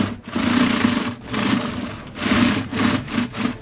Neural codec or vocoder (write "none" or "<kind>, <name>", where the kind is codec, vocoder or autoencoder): none